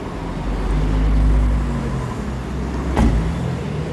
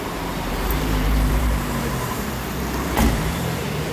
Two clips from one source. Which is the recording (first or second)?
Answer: first